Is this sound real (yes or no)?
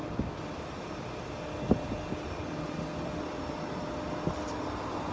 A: yes